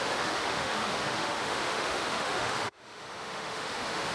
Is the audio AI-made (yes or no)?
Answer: yes